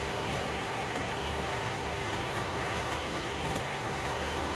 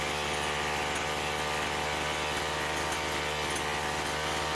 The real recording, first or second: second